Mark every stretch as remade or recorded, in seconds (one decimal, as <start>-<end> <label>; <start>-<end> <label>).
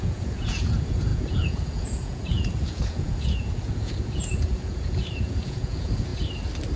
0.0-6.1 remade; 6.1-6.8 recorded